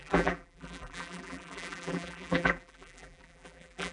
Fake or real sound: fake